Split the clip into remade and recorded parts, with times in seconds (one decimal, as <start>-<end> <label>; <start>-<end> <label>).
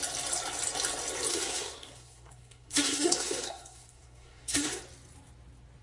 0.0-1.3 recorded; 1.3-4.8 remade; 4.8-5.8 recorded